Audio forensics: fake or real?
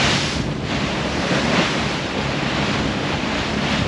fake